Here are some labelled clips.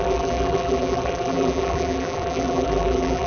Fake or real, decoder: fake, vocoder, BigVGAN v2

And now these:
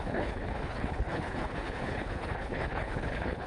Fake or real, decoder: fake, codec, HILCodec